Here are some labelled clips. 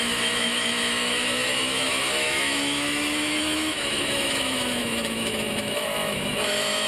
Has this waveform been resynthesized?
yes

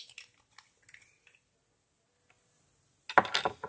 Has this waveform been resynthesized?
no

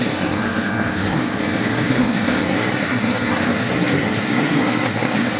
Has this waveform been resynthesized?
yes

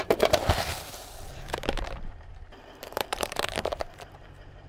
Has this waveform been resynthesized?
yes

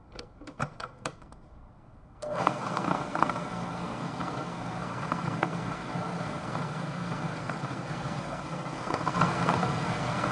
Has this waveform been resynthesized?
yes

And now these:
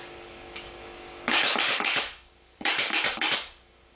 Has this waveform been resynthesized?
yes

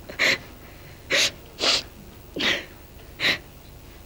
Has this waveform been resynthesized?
no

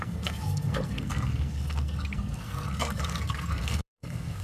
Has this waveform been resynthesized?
yes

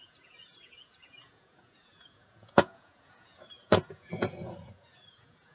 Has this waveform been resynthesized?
yes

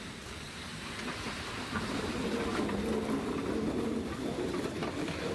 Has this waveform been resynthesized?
no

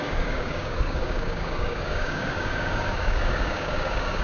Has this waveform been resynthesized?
yes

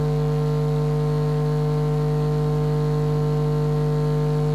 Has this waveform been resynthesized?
no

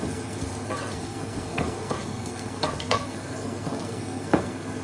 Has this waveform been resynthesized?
yes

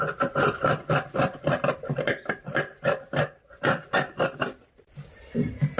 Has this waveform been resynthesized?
no